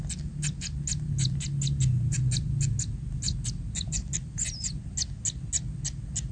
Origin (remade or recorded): recorded